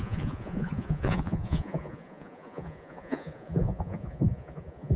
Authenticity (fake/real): fake